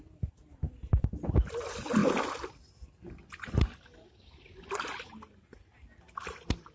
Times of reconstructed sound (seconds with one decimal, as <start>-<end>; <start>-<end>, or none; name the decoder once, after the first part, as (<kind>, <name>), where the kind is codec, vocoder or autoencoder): none